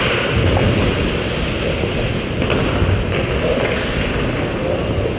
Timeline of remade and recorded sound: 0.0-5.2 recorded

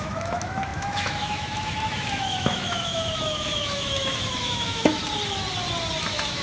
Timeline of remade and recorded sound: 0.0-5.0 remade; 5.0-6.0 recorded; 6.0-6.4 remade